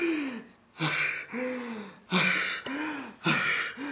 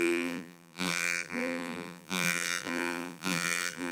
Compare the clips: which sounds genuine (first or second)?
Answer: first